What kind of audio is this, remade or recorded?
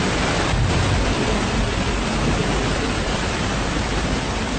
remade